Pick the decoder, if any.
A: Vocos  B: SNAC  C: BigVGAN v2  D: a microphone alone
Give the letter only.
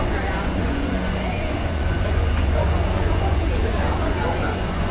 A